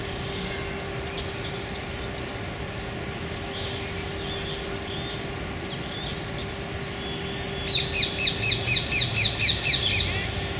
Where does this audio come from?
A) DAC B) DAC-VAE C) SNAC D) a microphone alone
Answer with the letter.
D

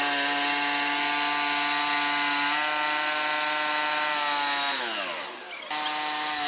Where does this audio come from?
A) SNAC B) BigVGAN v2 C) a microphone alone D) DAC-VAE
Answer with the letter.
C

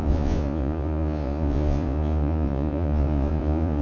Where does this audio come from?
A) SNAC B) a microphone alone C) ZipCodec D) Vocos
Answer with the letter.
D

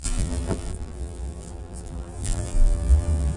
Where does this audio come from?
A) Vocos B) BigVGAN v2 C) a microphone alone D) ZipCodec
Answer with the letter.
B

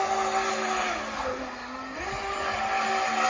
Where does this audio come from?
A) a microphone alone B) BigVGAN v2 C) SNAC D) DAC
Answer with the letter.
A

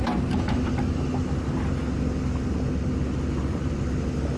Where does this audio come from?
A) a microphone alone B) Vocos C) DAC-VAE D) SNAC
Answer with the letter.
A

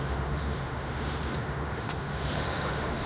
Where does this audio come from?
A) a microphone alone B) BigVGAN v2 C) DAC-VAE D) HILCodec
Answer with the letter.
C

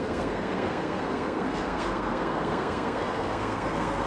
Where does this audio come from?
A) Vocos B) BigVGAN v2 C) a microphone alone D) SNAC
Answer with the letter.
D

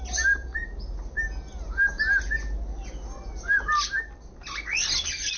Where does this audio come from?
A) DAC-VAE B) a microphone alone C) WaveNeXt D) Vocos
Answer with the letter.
B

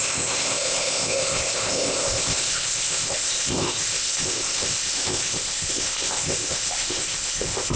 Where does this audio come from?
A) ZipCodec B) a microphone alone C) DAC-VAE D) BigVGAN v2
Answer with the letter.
A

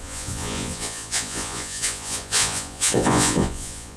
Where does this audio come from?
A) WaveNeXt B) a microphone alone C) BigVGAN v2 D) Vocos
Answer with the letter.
D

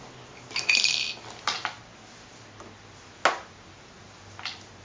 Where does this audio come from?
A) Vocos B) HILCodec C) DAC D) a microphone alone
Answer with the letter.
D